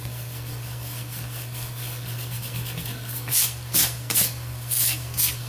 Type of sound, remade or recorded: remade